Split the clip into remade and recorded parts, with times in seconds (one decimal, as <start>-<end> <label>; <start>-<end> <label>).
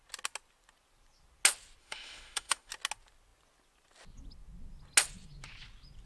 0.0-1.8 recorded; 1.8-2.7 remade; 2.7-6.1 recorded